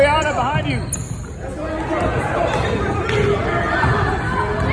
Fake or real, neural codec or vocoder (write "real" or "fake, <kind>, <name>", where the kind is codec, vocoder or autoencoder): real